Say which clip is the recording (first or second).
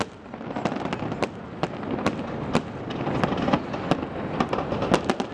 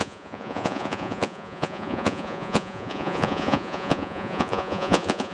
first